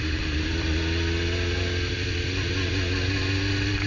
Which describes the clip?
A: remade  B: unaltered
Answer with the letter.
B